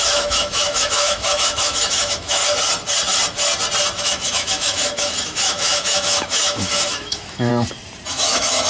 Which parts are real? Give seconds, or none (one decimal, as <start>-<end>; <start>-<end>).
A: 2.4-4.0; 7.5-8.1